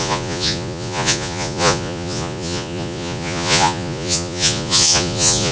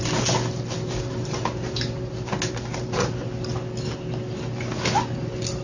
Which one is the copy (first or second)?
first